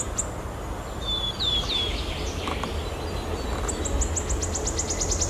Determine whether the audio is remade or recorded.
recorded